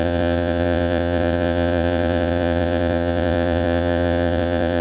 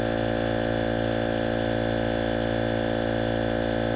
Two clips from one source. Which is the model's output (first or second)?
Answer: first